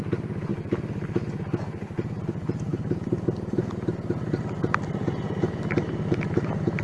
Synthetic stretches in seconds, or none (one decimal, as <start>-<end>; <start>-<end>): none